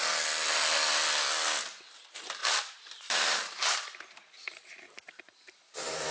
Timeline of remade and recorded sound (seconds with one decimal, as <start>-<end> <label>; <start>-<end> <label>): 0.0-2.4 recorded; 2.4-6.1 remade